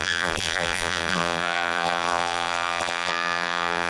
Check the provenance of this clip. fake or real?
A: fake